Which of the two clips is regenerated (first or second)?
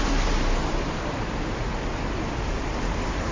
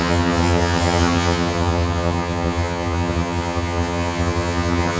second